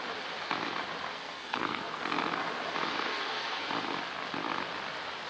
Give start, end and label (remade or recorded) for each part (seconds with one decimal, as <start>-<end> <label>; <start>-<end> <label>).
0.0-1.1 recorded; 1.1-2.0 remade; 2.0-3.1 recorded; 3.1-3.7 remade; 3.7-5.3 recorded

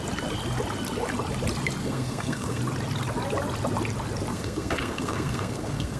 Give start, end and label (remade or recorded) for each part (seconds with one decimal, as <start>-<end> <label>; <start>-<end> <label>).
0.0-1.8 recorded; 1.8-2.6 remade; 2.6-4.3 recorded; 4.3-6.0 remade

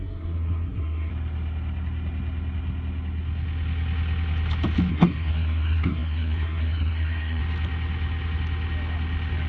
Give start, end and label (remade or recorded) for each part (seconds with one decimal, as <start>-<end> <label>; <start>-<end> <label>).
0.0-1.1 remade; 1.1-4.9 recorded; 4.9-7.4 remade; 7.4-9.5 recorded

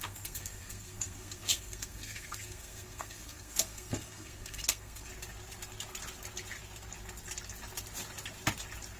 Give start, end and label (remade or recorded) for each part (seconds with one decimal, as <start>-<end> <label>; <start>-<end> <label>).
0.0-5.1 remade; 5.1-9.0 recorded

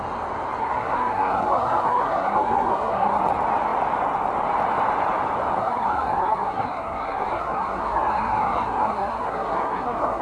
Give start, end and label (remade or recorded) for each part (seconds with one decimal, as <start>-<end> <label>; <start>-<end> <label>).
0.0-0.6 recorded; 0.6-3.2 remade; 3.2-5.6 recorded; 5.6-10.2 remade

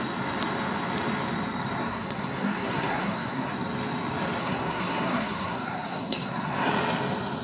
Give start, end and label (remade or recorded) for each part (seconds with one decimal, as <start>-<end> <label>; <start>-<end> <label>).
0.0-1.9 recorded; 1.9-3.5 remade; 3.5-4.4 recorded; 4.4-6.7 remade; 6.7-7.4 recorded